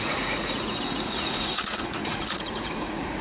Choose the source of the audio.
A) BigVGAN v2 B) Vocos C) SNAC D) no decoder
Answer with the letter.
B